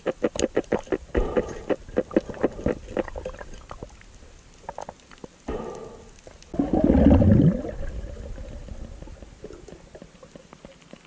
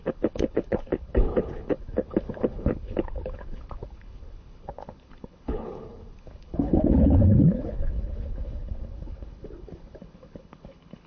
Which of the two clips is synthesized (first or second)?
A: second